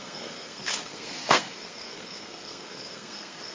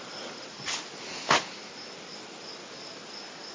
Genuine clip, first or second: second